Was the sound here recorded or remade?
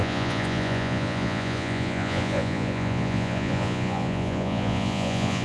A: remade